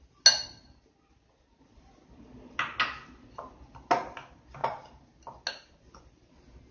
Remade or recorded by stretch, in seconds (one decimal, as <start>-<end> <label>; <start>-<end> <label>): 0.0-6.7 recorded

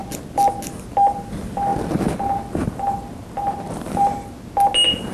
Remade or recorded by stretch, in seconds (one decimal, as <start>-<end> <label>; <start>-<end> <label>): 0.0-5.1 recorded